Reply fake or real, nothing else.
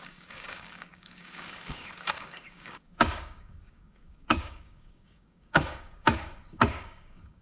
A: fake